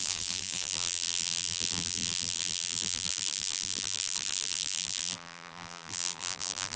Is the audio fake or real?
fake